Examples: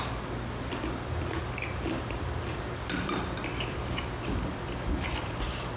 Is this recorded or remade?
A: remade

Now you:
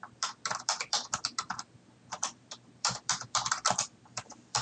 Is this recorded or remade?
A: remade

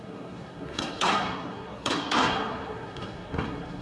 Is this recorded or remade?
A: remade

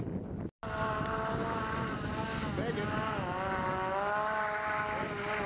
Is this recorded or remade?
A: recorded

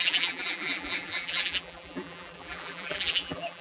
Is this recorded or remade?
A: remade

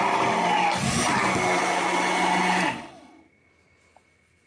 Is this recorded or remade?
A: recorded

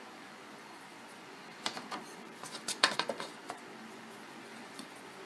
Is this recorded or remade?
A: remade